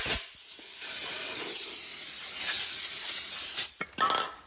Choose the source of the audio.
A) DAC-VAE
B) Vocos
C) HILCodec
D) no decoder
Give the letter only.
D